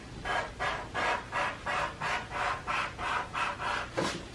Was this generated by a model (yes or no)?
no